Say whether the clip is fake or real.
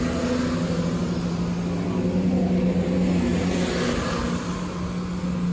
real